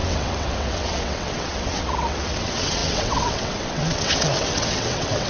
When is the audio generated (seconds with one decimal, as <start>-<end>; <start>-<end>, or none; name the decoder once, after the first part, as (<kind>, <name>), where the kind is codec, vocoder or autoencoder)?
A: 0.0-5.3 (vocoder, WaveNeXt)